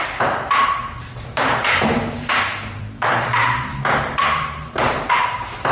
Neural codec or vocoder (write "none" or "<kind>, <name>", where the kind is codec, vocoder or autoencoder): vocoder, BigVGAN v2